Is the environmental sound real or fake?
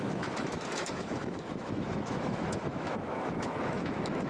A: fake